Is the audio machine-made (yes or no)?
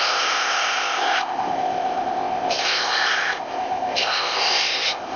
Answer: yes